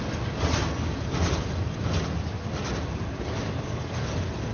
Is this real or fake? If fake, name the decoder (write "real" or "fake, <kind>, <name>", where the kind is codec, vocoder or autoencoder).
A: real